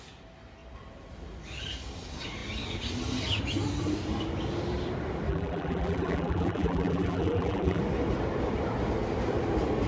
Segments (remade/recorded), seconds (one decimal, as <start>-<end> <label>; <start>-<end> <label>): 0.0-5.3 recorded; 5.3-7.8 remade; 7.8-9.9 recorded